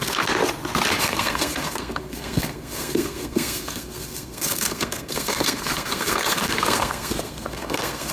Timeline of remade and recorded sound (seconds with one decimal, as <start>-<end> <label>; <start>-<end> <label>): 0.0-0.4 remade; 0.4-1.0 recorded; 1.0-8.1 remade